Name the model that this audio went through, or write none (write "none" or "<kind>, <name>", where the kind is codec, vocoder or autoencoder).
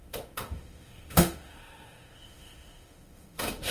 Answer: autoencoder, DAC-VAE